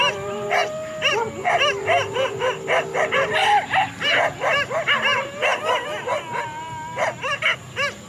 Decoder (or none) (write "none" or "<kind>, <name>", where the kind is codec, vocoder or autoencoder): none